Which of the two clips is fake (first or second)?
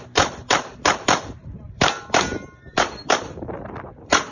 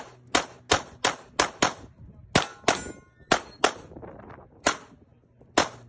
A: first